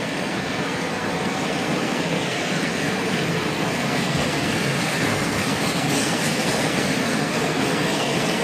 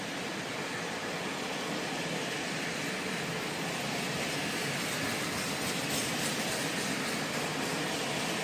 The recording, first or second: second